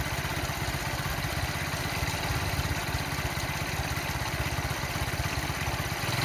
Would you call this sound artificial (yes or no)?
no